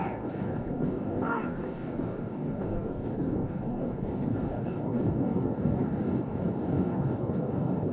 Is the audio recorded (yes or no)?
no